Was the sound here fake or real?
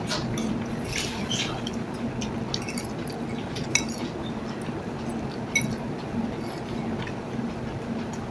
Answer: real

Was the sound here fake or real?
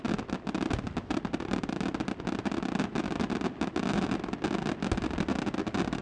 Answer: real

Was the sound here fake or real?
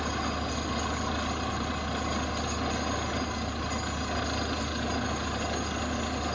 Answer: real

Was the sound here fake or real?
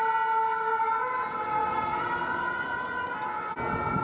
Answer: real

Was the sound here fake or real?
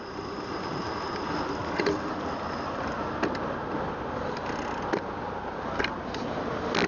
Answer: real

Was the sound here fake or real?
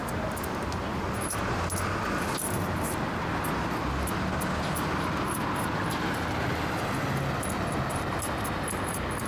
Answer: real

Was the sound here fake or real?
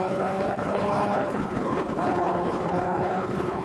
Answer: fake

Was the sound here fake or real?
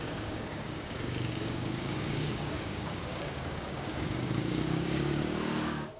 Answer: fake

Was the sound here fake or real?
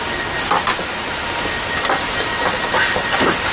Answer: real